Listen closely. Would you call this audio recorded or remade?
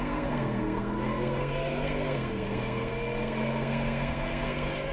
remade